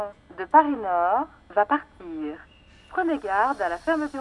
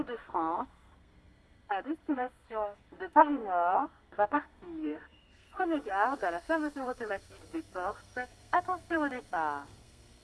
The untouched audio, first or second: first